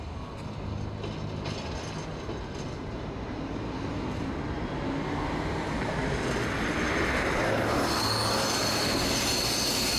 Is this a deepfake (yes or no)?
no